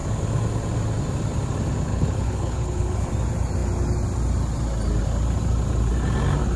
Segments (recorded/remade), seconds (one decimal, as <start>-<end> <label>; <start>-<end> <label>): 0.0-1.9 recorded; 1.9-3.1 remade; 3.1-6.6 recorded

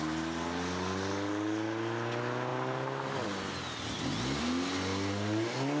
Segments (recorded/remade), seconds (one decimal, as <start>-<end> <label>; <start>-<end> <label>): 0.0-5.8 recorded

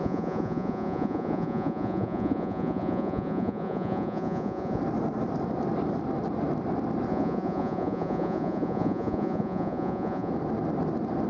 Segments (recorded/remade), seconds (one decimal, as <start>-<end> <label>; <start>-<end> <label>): 0.0-4.8 remade; 4.8-7.1 recorded; 7.1-10.3 remade; 10.3-11.3 recorded

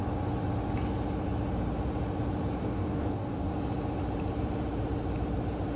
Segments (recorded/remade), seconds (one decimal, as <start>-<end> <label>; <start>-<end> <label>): 0.0-2.6 recorded; 2.6-3.5 remade; 3.5-5.8 recorded

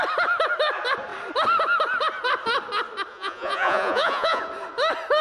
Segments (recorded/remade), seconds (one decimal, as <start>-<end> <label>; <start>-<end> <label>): 0.0-3.1 recorded; 3.1-4.4 remade; 4.4-5.2 recorded